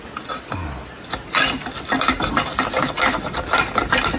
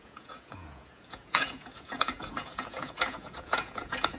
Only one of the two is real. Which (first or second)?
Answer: first